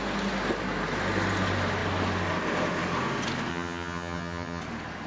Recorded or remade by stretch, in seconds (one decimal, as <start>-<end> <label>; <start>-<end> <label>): 0.0-3.5 recorded; 3.5-4.6 remade; 4.6-5.1 recorded